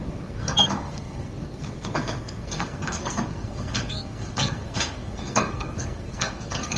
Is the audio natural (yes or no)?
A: no